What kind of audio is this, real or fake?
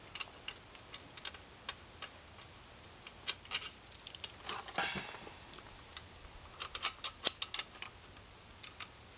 real